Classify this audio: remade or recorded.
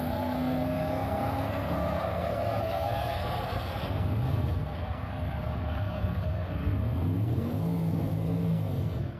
remade